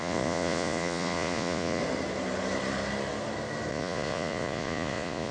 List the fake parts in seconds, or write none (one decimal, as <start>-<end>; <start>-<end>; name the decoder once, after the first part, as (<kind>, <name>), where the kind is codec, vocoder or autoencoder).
0.0-1.8 (vocoder, Vocos); 3.7-5.3

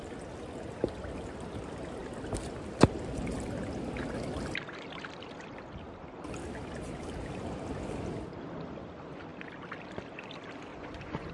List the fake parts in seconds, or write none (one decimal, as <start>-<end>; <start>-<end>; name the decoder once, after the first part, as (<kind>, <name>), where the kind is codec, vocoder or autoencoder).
10.7-11.3 (vocoder, Vocos)

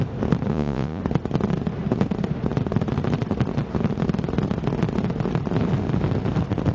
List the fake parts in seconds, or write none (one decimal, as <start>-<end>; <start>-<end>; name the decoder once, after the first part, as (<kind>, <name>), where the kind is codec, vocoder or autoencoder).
0.5-1.0 (vocoder, Vocos)